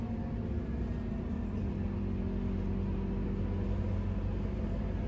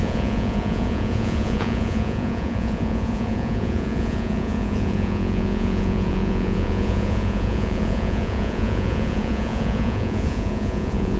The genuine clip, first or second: first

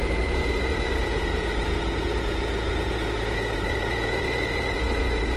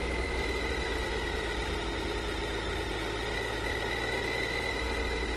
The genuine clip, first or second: second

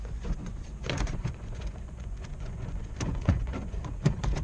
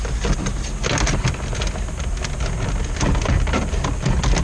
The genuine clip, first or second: second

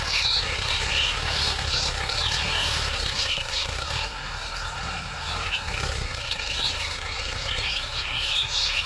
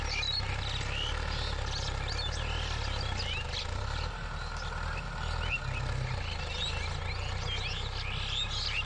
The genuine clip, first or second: second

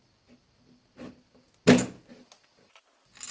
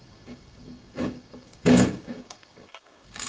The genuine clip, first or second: first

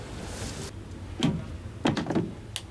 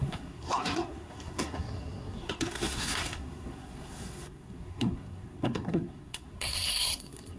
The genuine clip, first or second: first